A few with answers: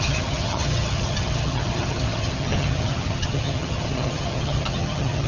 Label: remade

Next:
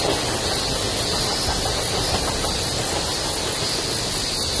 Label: recorded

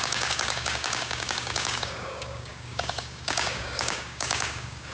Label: remade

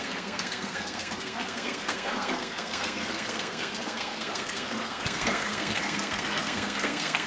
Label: remade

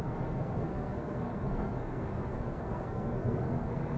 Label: remade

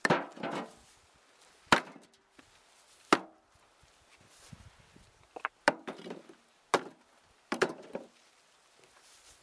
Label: recorded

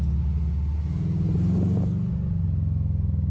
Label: recorded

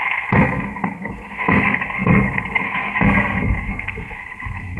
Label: remade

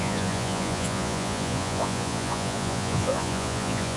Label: remade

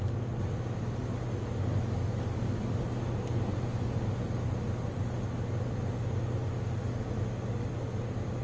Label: recorded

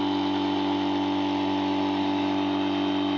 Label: recorded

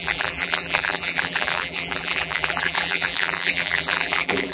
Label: remade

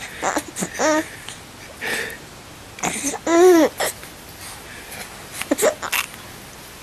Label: recorded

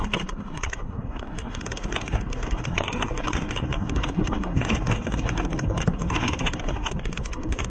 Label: remade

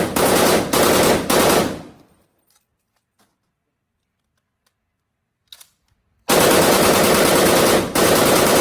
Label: remade